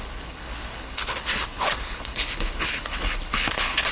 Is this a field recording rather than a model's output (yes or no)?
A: no